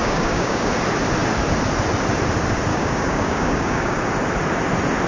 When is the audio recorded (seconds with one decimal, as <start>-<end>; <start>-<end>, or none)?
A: 0.7-2.7; 4.0-5.1